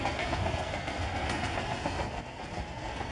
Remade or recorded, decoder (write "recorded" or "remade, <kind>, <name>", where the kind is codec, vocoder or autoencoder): remade, codec, SNAC